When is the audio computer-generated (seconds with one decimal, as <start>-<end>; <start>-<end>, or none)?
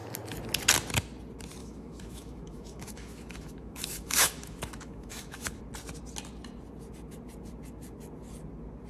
1.6-5.6